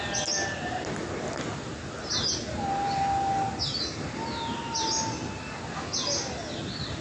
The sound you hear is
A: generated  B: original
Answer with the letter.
B